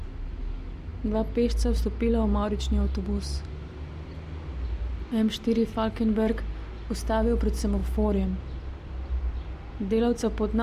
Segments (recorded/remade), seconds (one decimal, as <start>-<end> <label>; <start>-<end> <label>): 0.0-10.6 recorded